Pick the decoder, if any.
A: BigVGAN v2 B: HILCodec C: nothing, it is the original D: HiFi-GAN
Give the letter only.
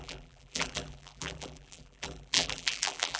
A